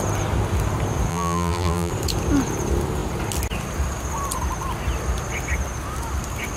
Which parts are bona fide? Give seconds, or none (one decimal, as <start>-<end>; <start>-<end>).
0.0-1.1; 1.9-6.6